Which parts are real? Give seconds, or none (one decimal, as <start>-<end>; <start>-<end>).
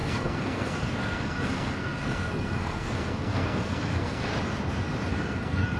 4.3-5.1